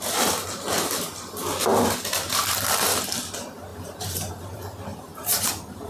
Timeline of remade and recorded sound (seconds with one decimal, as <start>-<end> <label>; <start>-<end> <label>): 0.0-3.7 recorded; 3.7-4.3 remade; 4.3-4.9 recorded; 4.9-5.5 remade; 5.5-5.9 recorded